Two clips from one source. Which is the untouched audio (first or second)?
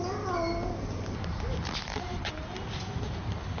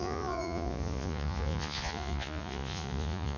first